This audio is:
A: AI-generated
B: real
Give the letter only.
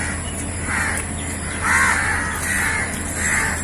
B